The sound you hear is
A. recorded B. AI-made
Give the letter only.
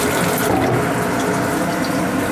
A